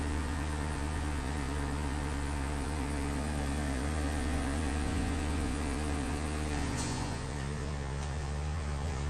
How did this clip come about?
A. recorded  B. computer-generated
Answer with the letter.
B